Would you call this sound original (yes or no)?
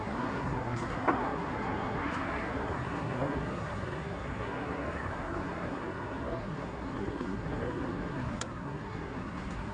no